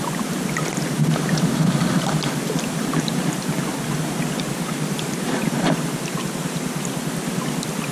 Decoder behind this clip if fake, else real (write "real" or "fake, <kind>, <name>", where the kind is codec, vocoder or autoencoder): fake, vocoder, BigVGAN v2